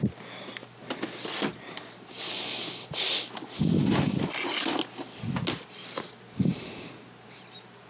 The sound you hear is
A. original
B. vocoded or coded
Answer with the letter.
A